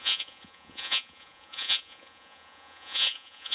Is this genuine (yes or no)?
no